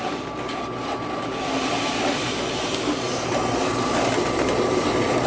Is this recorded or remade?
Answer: remade